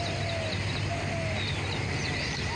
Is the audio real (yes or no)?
yes